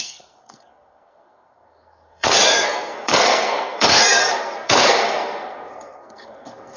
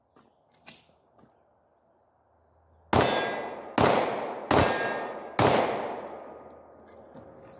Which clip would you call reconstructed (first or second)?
first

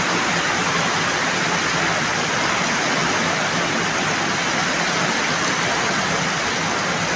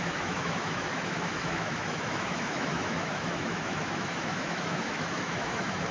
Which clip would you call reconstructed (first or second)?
second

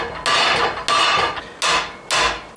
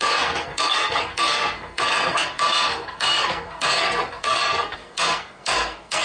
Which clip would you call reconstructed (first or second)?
second